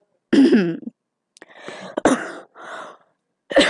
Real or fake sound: real